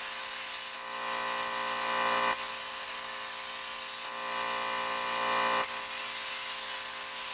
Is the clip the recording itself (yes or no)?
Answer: yes